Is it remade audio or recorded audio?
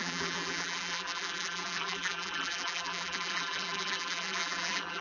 remade